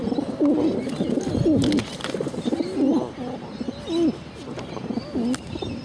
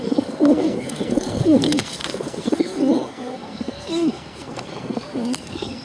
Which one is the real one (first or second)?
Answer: first